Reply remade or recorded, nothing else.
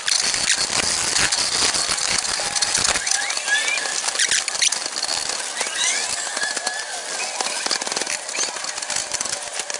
recorded